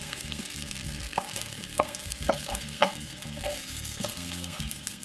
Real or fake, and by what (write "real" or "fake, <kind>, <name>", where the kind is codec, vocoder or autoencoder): fake, codec, SNAC